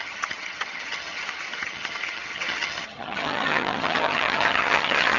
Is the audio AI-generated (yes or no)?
yes